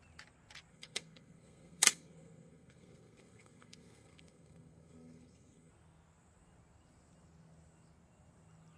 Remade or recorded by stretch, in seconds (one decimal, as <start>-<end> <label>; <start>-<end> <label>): 0.0-0.7 recorded; 0.7-5.7 remade; 5.7-8.8 recorded

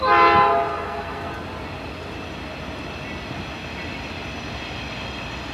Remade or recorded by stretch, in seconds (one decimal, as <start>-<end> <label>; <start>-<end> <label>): 0.0-0.7 recorded; 0.7-1.3 remade; 1.3-5.5 recorded

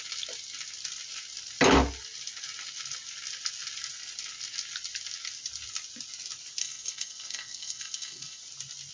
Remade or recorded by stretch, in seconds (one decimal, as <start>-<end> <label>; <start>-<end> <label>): 0.0-6.6 recorded; 6.6-8.4 remade; 8.4-8.9 recorded

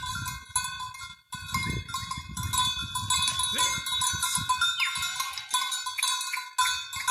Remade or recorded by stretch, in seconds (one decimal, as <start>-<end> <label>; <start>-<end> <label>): 0.0-7.1 recorded

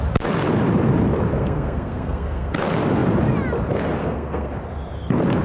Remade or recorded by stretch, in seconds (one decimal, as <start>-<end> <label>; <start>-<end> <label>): 0.0-1.4 recorded; 1.4-2.6 remade; 2.6-4.0 recorded; 4.0-4.5 remade; 4.5-5.4 recorded

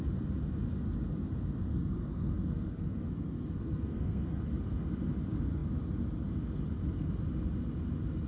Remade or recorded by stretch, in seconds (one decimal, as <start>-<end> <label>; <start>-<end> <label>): 0.0-1.7 recorded; 1.7-4.4 remade; 4.4-8.3 recorded

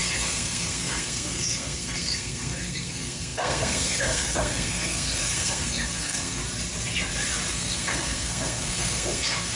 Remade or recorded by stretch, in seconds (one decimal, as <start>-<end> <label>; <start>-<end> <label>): 0.0-6.4 remade; 6.4-7.5 recorded; 7.5-9.6 remade

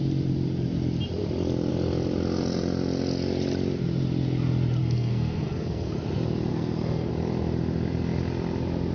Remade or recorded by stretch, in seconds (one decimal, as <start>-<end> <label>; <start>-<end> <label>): 0.0-4.8 recorded; 4.8-5.9 remade; 5.9-6.5 recorded; 6.5-7.1 remade; 7.1-8.9 recorded